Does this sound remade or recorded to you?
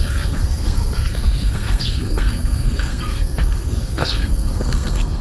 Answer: remade